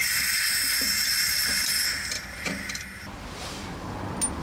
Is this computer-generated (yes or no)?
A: no